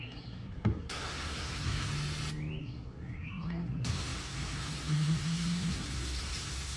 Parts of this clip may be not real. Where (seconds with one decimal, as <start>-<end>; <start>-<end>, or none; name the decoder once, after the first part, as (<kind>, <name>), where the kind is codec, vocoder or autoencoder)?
0.0-1.9 (codec, SNAC); 2.6-6.8

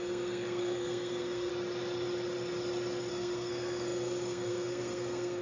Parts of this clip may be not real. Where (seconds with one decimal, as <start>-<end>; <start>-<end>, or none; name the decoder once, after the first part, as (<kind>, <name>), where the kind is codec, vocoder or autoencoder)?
0.0-1.5 (codec, SNAC); 3.1-5.4

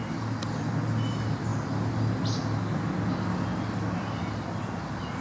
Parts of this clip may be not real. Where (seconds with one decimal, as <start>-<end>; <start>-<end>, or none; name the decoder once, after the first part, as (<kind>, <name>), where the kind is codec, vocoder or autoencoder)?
none

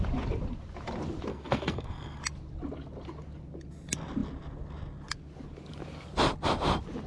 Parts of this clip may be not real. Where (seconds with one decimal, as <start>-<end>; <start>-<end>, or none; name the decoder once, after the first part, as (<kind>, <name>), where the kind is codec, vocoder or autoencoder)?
1.3-2.2 (codec, SNAC)

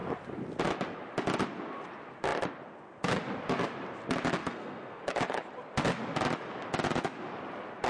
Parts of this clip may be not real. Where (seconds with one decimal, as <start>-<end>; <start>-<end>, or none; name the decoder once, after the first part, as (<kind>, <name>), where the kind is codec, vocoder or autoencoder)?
4.4-5.0 (codec, SNAC)

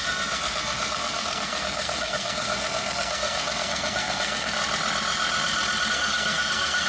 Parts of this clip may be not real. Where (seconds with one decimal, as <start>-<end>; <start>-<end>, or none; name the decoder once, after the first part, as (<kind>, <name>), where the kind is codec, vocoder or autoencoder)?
0.0-4.6 (codec, SNAC); 5.9-6.9